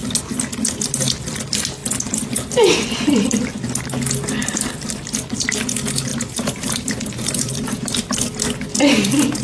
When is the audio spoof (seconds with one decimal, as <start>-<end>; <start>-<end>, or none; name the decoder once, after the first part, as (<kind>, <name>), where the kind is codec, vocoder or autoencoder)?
6.1-8.1 (vocoder, BigVGAN v2)